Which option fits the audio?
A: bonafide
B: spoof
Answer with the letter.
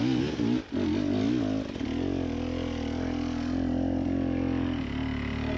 A